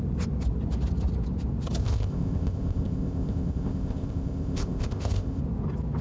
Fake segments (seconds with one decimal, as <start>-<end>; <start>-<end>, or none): 1.8-5.4